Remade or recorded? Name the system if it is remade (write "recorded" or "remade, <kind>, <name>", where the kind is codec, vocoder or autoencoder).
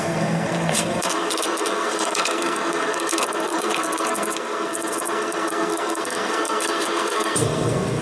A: remade, codec, SNAC